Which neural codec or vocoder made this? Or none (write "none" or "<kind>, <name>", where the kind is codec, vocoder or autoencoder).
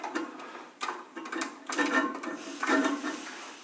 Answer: vocoder, BigVGAN v2